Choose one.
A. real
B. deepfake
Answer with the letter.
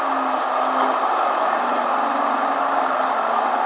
A